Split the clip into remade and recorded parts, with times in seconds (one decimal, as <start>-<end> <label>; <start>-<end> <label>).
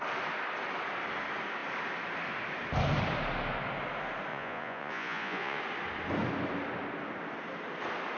0.0-4.3 recorded; 4.3-5.6 remade; 5.6-8.2 recorded